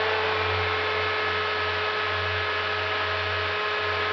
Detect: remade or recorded recorded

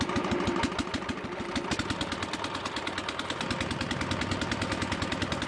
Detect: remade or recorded recorded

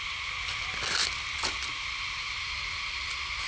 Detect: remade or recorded recorded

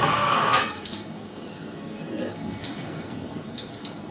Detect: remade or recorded remade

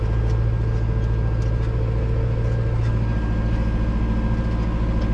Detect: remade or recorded recorded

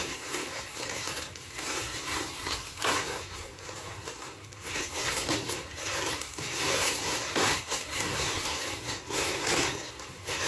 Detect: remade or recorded remade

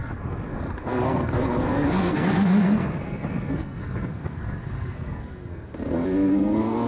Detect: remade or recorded remade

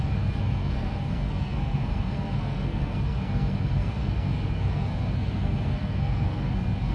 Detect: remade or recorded remade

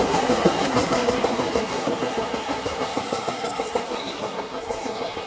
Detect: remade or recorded remade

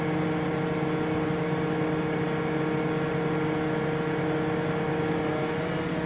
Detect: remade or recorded recorded